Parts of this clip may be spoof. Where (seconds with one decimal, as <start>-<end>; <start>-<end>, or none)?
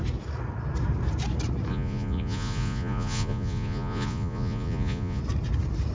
1.7-5.2